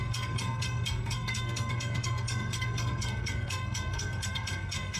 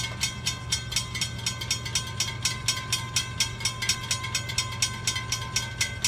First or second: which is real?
second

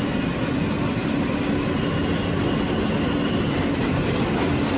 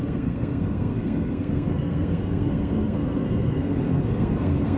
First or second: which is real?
first